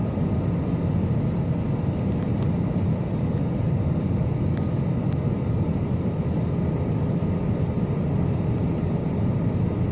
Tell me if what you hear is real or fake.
real